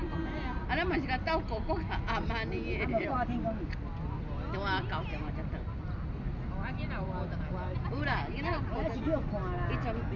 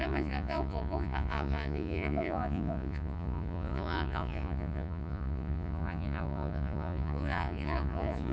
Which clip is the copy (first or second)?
second